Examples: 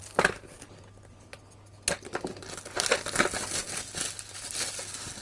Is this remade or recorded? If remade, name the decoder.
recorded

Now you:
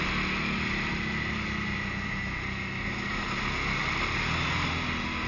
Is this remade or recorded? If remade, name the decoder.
recorded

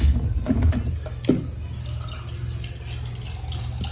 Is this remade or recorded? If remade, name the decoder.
recorded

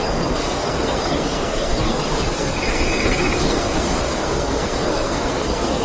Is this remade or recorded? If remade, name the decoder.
remade, codec, SNAC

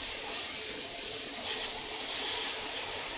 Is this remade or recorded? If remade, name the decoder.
remade, vocoder, BigVGAN v2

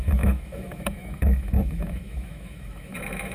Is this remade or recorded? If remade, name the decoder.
remade, autoencoder, DAC-VAE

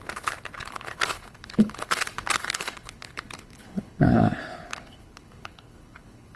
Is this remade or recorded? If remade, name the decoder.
remade, codec, HILCodec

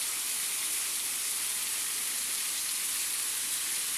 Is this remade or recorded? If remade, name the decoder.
recorded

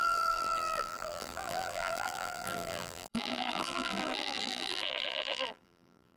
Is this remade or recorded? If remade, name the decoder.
remade, vocoder, BigVGAN v2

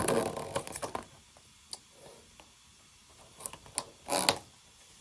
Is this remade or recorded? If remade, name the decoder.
recorded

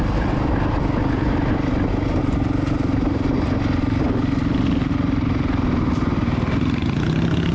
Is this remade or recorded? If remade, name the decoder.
recorded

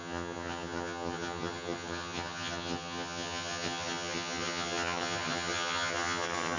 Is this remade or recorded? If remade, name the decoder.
remade, vocoder, HiFi-GAN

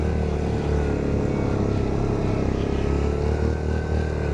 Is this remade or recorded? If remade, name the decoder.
recorded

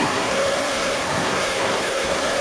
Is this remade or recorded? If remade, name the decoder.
remade, codec, SNAC